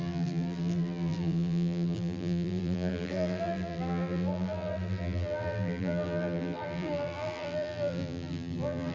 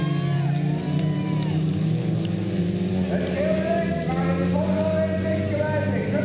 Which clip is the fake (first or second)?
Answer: first